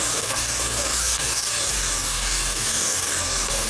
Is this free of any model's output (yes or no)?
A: no